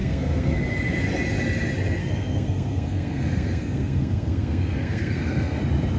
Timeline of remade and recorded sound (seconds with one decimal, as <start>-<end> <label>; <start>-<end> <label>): 0.0-0.6 remade; 0.6-2.0 recorded; 2.0-5.6 remade; 5.6-6.0 recorded